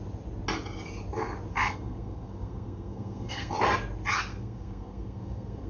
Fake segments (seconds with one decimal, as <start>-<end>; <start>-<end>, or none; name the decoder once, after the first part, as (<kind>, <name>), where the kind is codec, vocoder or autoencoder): 1.5-3.5 (codec, SNAC); 4.3-5.7